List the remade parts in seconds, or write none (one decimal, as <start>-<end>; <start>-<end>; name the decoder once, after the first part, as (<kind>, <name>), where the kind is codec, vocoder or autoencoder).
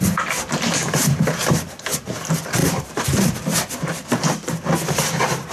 0.8-1.5 (vocoder, BigVGAN v2); 2.6-4.3